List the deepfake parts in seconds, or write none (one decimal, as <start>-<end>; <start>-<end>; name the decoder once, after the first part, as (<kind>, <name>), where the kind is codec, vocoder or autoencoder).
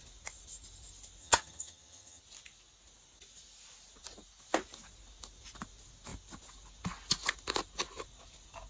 1.2-2.2 (vocoder, HiFi-GAN)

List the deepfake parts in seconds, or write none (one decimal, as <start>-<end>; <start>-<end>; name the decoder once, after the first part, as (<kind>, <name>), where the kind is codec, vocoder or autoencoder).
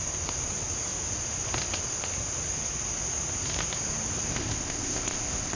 4.3-5.6 (codec, ZipCodec)